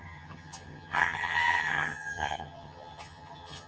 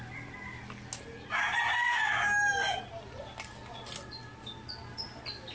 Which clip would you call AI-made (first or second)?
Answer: first